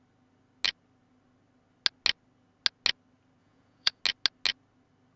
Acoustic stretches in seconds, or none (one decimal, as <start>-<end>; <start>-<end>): 0.0-3.4; 4.0-5.2

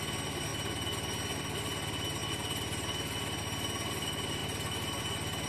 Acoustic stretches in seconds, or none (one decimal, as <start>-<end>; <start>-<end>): 0.0-4.4; 5.0-5.5